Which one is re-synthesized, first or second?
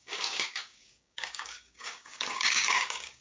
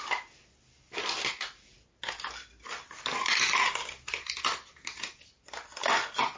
first